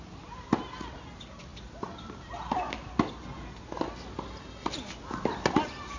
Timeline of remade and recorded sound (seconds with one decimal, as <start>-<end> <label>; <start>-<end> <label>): 0.0-6.0 recorded